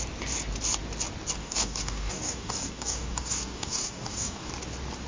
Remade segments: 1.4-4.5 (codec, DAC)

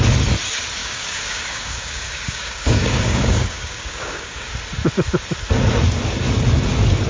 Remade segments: 0.8-4.5 (codec, DAC)

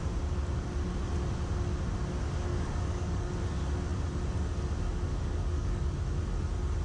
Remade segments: 2.5-3.3 (codec, DAC); 5.1-5.8

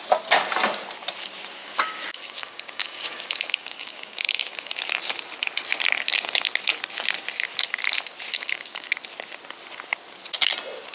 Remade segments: 1.6-4.7 (codec, DAC); 8.3-8.9

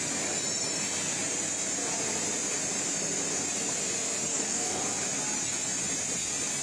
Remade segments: 4.3-4.8 (codec, DAC)

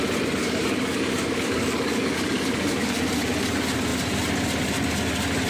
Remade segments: 0.4-3.0 (codec, DAC)